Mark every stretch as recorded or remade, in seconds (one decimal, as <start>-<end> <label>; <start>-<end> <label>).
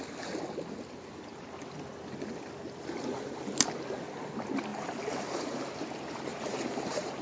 0.0-4.7 recorded; 4.7-5.6 remade; 5.6-6.3 recorded; 6.3-7.2 remade